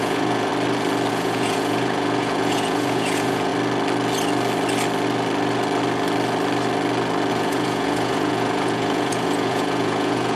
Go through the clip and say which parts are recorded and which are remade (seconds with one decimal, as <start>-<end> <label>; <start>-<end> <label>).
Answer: 0.0-0.5 remade; 0.5-1.1 recorded; 1.1-3.5 remade; 3.5-7.3 recorded; 7.3-10.4 remade